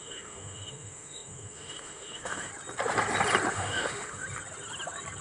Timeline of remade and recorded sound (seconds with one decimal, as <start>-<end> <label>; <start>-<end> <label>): 0.0-2.5 remade; 2.5-3.5 recorded; 3.5-4.2 remade; 4.2-5.2 recorded